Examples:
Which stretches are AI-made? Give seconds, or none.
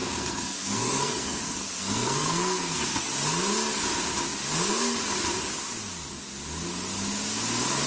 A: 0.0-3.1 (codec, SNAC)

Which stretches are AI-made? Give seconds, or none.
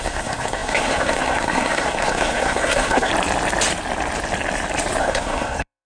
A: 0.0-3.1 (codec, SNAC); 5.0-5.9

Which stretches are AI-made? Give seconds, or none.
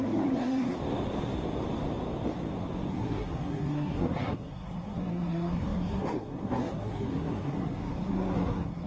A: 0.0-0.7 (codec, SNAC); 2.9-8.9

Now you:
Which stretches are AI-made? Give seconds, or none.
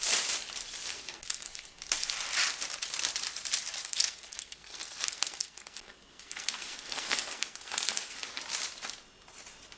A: 0.9-1.8 (codec, SNAC); 3.8-8.4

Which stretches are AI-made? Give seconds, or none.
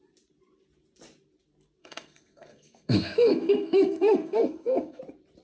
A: 1.8-5.0 (codec, SNAC)